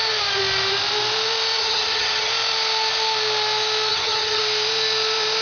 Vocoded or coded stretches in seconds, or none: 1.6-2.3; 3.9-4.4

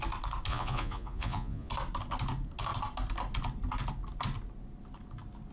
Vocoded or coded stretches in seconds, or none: 0.5-1.7

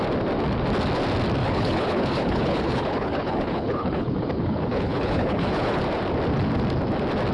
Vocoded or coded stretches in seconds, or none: 1.4-5.8

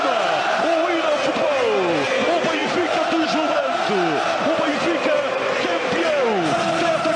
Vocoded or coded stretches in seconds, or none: 2.6-3.8; 4.7-5.9

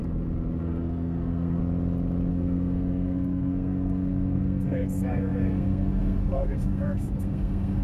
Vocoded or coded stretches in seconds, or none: 0.6-1.6; 2.3-7.8